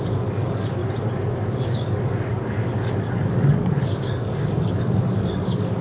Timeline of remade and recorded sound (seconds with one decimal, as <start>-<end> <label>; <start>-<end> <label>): 0.0-0.8 remade; 0.8-1.3 recorded; 1.3-5.8 remade